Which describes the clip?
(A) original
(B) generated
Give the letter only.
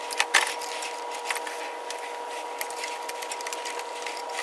A